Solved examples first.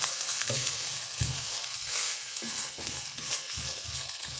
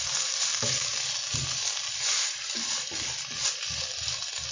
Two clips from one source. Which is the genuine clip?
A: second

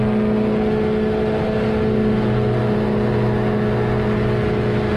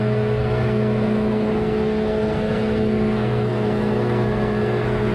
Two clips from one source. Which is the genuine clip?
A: first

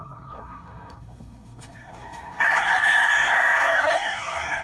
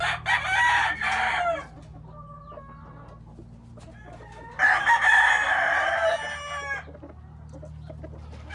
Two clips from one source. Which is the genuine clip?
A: second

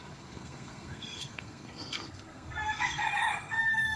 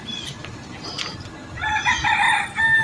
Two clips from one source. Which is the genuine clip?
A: second